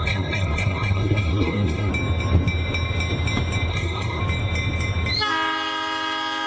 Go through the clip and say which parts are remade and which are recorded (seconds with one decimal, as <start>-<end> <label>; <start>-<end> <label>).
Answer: 0.0-1.9 remade; 1.9-3.7 recorded; 3.7-4.2 remade; 4.2-6.5 recorded